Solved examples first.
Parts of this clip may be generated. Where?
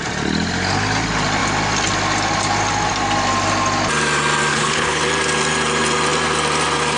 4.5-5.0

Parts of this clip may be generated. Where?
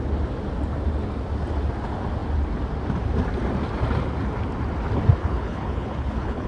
5.2-6.5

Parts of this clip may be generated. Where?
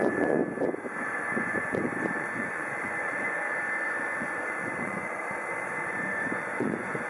0.0-0.4; 1.0-7.1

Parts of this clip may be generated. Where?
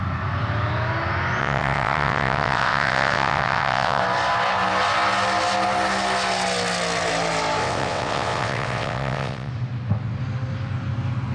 1.4-4.0; 7.6-9.5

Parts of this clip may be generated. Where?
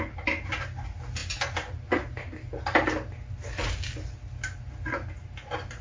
none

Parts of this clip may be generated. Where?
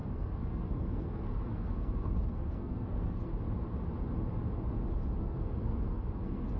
0.0-3.3; 5.2-6.6